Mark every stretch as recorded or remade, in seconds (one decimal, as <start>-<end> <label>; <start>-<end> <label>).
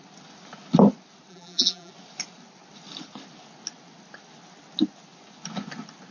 0.0-1.3 recorded; 1.3-1.9 remade; 1.9-6.1 recorded